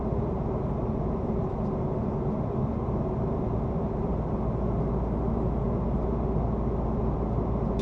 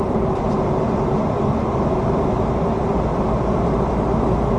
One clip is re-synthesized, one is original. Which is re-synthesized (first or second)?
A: second